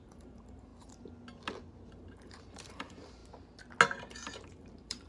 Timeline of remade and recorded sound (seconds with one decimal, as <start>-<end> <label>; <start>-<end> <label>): 0.0-0.7 remade; 0.7-1.9 recorded; 1.9-3.2 remade; 3.2-4.0 recorded; 4.0-5.1 remade